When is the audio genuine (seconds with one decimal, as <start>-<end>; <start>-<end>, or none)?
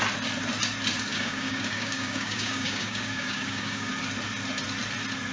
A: 0.0-1.1; 3.9-5.3